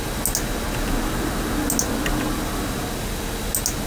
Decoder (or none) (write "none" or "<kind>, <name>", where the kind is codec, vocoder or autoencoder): none